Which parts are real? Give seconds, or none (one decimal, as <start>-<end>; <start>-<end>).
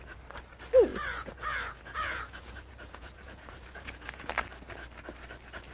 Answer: 0.0-0.9; 4.3-5.7